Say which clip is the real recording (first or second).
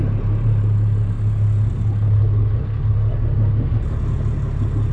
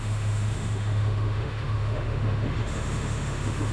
first